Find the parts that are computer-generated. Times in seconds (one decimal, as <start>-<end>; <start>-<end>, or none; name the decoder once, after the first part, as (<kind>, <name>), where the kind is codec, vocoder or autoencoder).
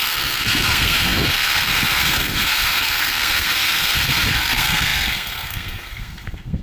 0.0-6.6 (codec, SNAC)